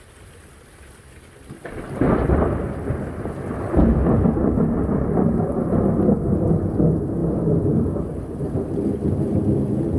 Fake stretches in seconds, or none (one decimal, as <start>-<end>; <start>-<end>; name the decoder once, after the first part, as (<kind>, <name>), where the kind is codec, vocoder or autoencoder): none